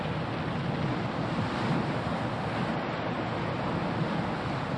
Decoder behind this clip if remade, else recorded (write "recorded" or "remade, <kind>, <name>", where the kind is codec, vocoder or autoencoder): recorded